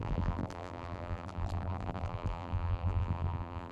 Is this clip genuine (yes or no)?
no